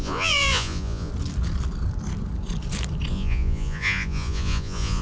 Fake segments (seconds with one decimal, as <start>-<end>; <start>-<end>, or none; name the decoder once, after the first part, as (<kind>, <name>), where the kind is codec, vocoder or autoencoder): 0.0-1.1 (vocoder, Vocos); 3.1-5.0